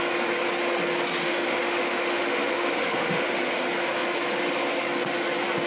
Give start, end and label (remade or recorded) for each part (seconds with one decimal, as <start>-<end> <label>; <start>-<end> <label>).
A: 0.0-1.2 recorded; 1.2-3.4 remade; 3.4-5.7 recorded